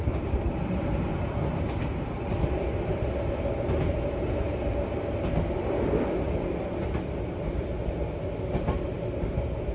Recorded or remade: recorded